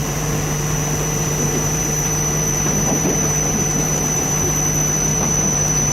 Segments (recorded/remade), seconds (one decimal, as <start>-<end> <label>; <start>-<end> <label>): 0.0-5.9 remade